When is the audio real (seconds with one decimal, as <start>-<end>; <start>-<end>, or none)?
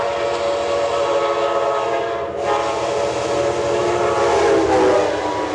0.0-5.5